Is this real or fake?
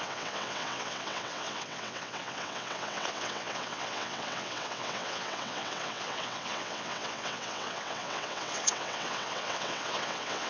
fake